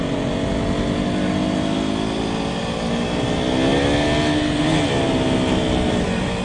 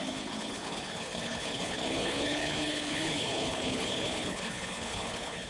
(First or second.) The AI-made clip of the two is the second